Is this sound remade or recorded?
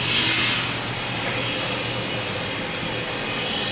recorded